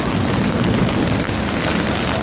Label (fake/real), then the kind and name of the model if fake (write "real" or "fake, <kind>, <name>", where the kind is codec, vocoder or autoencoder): real